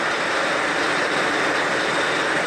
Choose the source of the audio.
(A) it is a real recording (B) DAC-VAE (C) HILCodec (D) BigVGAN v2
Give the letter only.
A